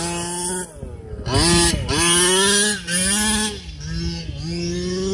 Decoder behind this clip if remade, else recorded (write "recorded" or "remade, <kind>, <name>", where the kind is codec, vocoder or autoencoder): recorded